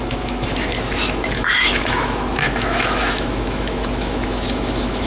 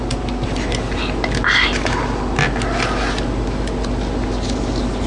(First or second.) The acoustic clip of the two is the second